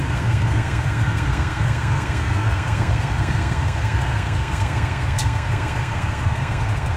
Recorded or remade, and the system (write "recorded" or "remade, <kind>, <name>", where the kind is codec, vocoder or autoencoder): remade, codec, SNAC